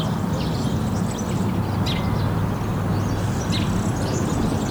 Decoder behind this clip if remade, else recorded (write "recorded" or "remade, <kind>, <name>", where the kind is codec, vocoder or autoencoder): recorded